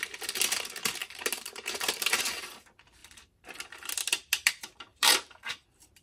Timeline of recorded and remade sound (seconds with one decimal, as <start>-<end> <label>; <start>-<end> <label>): 0.0-1.0 recorded; 1.0-2.4 remade; 2.4-4.9 recorded; 4.9-5.5 remade; 5.5-6.0 recorded